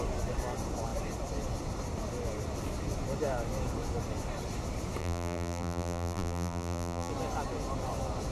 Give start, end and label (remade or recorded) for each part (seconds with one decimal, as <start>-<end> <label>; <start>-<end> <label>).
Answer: 0.0-5.0 recorded; 5.0-7.1 remade; 7.1-8.3 recorded